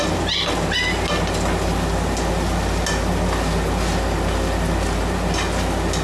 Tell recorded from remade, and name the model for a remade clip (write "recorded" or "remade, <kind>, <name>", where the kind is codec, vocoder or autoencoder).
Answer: recorded